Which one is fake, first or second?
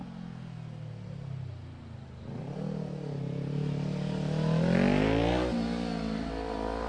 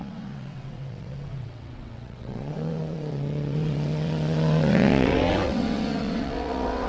second